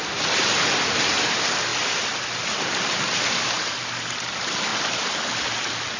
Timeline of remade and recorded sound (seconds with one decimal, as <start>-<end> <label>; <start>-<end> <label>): 0.0-6.0 recorded